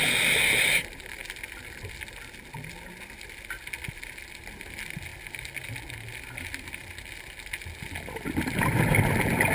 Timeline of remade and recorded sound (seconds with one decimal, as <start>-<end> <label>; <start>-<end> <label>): 0.0-9.5 recorded